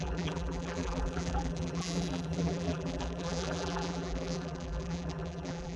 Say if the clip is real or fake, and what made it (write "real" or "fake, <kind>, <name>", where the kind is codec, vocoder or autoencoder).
fake, vocoder, BigVGAN v2